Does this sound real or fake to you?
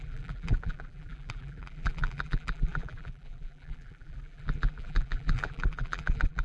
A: fake